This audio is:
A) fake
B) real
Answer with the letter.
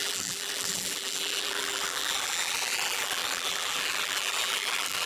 A